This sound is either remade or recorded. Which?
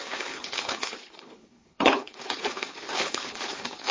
remade